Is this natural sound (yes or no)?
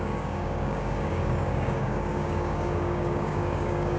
no